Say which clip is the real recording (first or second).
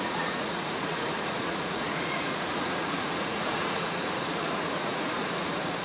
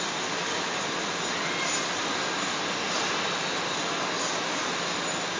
second